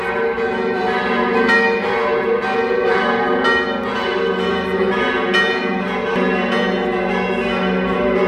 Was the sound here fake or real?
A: real